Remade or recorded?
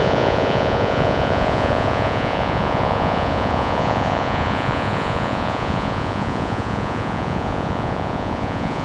remade